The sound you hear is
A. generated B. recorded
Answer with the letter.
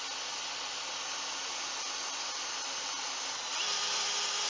B